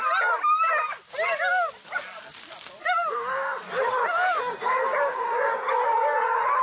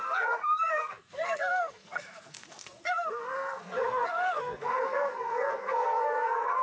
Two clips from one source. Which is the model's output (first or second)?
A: second